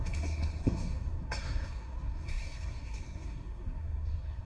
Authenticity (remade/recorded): remade